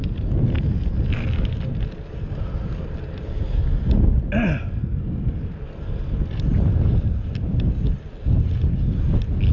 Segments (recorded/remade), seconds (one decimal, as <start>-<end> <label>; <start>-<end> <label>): 0.0-4.8 recorded; 4.8-5.4 remade; 5.4-9.5 recorded